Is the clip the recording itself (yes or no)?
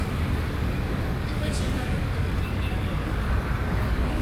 no